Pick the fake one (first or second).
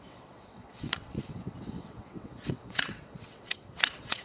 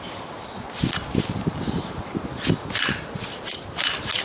first